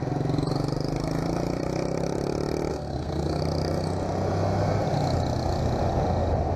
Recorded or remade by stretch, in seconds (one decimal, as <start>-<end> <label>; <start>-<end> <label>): 0.0-2.7 recorded; 2.7-3.4 remade; 3.4-6.6 recorded

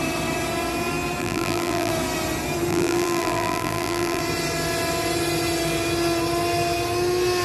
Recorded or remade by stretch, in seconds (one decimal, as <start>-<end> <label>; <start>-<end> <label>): 0.0-1.2 recorded; 1.2-1.9 remade; 1.9-2.7 recorded; 2.7-4.2 remade; 4.2-7.4 recorded

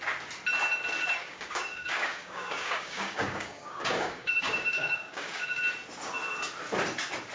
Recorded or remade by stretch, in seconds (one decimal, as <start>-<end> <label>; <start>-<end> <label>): 0.0-1.2 recorded; 1.2-5.6 remade; 5.6-7.3 recorded